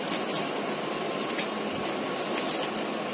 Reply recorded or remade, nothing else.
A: recorded